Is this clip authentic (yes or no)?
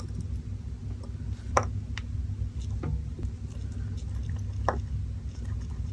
yes